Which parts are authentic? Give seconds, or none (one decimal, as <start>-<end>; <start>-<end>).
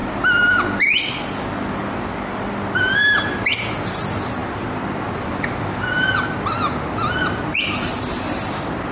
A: 0.0-3.0; 3.5-8.9